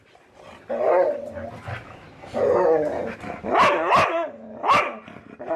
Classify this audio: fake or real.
real